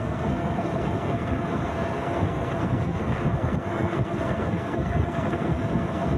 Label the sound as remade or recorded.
remade